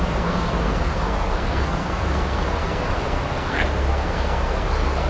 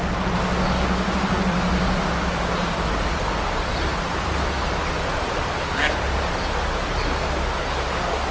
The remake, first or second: first